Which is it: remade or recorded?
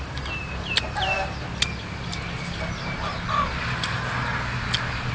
recorded